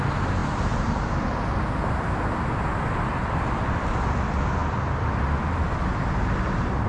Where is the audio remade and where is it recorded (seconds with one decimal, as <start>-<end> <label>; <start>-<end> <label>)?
0.0-6.9 recorded